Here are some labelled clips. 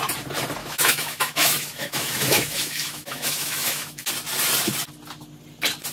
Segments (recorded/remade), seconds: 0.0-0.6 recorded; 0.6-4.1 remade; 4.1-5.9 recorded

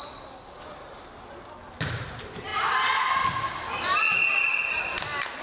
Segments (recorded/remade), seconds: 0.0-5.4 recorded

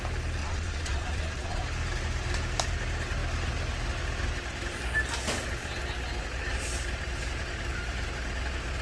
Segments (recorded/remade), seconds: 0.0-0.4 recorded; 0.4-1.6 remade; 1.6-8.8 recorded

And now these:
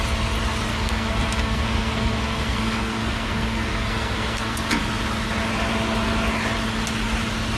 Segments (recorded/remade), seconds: 0.0-0.7 recorded; 0.7-4.8 remade; 4.8-7.6 recorded

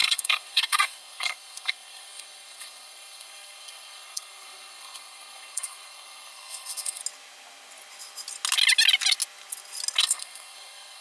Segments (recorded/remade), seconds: 0.0-7.0 remade; 7.0-10.0 recorded; 10.0-11.0 remade

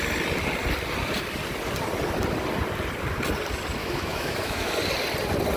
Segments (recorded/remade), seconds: 0.0-3.8 recorded; 3.8-4.7 remade; 4.7-5.6 recorded

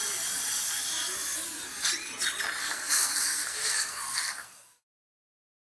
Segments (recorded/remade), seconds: 0.0-2.6 recorded; 2.6-5.7 remade

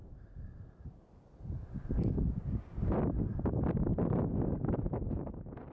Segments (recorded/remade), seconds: 0.0-5.7 recorded